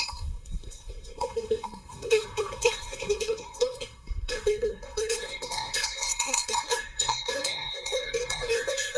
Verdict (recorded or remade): remade